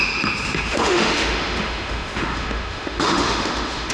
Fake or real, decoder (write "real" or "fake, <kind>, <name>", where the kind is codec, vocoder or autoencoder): fake, autoencoder, DAC-VAE